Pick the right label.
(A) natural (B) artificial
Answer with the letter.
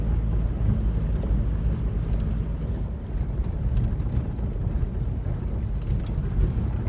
A